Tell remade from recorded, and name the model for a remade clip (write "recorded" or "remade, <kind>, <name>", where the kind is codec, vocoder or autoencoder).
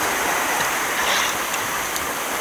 recorded